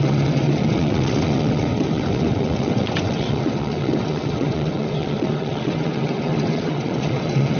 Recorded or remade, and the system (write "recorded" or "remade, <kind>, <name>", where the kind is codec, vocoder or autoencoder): remade, vocoder, WaveNeXt